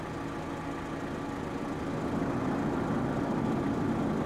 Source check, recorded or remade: recorded